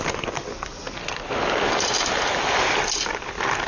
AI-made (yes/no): no